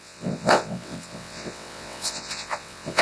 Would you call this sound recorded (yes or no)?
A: no